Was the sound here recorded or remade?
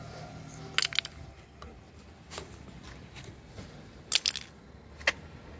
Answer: recorded